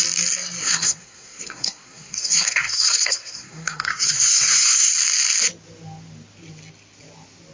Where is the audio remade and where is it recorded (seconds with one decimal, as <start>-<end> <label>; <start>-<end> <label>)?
0.0-0.6 recorded; 0.6-4.9 remade; 4.9-7.5 recorded